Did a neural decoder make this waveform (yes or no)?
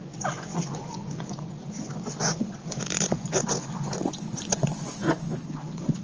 yes